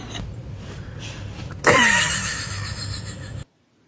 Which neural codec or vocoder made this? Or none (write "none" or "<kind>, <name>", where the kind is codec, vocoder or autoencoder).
none